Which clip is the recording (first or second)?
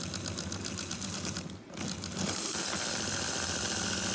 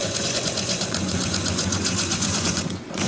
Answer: first